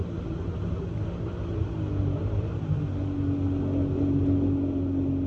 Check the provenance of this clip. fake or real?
real